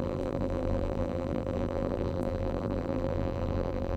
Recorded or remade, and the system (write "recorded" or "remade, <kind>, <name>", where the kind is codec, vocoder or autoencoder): remade, vocoder, BigVGAN v2